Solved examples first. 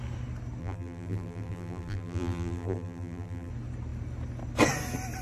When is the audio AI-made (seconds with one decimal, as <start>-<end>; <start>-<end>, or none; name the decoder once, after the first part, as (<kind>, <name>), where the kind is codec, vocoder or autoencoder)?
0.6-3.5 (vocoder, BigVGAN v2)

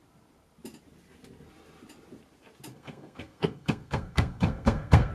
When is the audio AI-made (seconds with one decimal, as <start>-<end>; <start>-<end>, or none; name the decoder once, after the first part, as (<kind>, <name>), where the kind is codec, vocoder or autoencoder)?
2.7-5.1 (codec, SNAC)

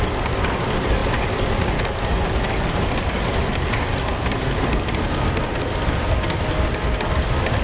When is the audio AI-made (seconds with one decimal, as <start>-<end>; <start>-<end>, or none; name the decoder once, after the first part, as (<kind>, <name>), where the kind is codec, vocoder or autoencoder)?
none

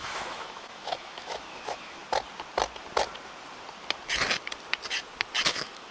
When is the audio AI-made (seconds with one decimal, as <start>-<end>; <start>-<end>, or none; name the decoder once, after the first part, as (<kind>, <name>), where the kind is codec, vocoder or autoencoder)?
0.0-2.0 (autoencoder, DAC-VAE); 5.5-5.9